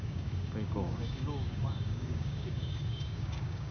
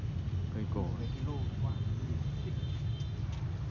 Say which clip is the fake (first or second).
first